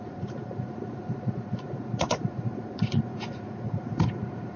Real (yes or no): no